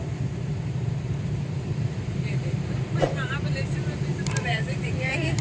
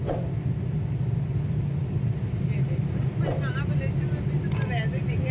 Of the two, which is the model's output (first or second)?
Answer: first